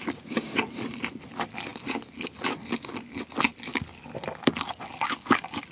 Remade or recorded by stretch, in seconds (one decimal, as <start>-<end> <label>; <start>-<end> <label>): 0.0-0.5 remade; 0.5-5.7 recorded